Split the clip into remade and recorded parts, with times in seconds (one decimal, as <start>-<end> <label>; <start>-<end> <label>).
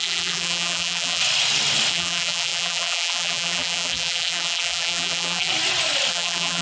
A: 0.0-1.2 remade; 1.2-1.9 recorded; 1.9-5.5 remade; 5.5-6.1 recorded; 6.1-6.6 remade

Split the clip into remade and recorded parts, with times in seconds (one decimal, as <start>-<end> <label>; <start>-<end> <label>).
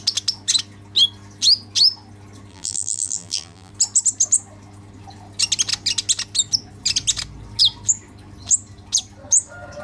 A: 0.0-2.5 recorded; 2.5-3.7 remade; 3.7-9.8 recorded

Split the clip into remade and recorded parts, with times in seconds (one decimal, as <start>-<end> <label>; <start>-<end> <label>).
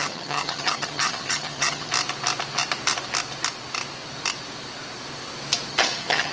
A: 0.0-1.9 remade; 1.9-5.7 recorded; 5.7-6.3 remade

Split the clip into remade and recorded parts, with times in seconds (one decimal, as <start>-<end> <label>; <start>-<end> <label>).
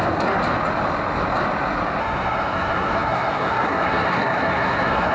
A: 0.0-2.0 recorded; 2.0-5.1 remade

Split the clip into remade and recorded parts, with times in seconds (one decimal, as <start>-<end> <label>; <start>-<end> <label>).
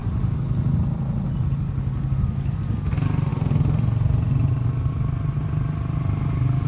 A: 0.0-6.7 recorded